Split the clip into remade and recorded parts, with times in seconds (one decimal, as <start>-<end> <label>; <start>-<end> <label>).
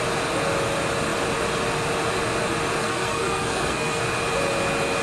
0.0-2.8 recorded; 2.8-4.0 remade; 4.0-5.0 recorded